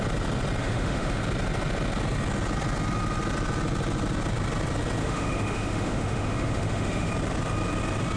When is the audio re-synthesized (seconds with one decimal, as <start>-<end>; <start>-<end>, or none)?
0.6-1.2; 5.0-7.1

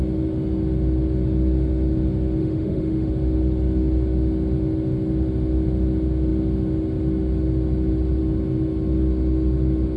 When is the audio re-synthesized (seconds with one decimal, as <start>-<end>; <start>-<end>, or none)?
2.4-3.1

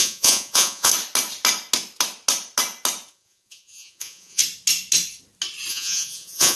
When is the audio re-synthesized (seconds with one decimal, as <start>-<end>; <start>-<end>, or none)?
0.0-0.9; 3.1-4.4; 5.7-6.6

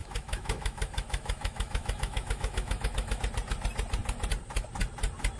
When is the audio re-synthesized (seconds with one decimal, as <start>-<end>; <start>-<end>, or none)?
0.0-3.2

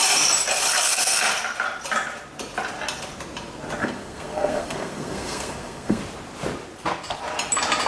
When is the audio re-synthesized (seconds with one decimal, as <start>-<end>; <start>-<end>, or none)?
0.7-1.3; 3.8-6.0

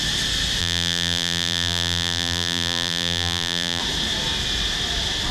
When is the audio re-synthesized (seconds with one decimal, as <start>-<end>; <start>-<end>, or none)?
0.6-3.8

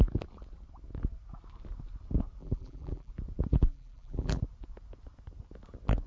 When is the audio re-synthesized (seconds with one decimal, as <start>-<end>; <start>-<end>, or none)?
2.4-3.1; 3.5-4.4